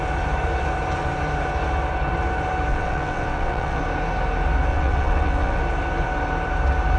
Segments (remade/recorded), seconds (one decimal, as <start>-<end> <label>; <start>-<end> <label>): 0.0-2.7 recorded; 2.7-3.8 remade; 3.8-4.7 recorded; 4.7-5.6 remade; 5.6-7.0 recorded